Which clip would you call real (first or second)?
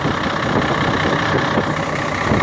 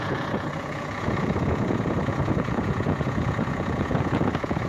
first